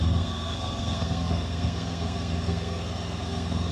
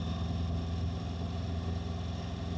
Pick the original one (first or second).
second